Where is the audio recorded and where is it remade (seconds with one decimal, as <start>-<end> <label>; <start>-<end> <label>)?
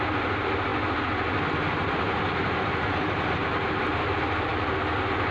0.0-5.3 recorded